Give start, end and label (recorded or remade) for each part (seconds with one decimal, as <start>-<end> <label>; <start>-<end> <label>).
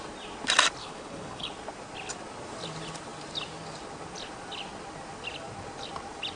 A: 0.0-0.8 recorded; 0.8-1.5 remade; 1.5-6.4 recorded